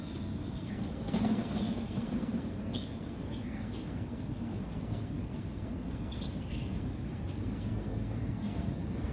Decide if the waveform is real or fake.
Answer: fake